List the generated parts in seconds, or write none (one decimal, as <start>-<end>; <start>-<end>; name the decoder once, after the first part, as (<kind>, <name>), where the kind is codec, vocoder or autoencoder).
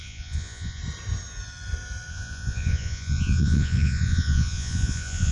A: 0.0-0.8 (vocoder, Vocos); 2.1-5.3